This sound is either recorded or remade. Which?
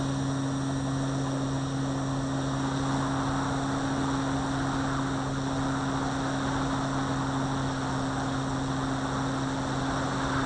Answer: recorded